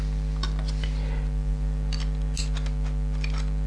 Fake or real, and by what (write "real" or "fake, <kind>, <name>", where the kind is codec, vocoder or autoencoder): real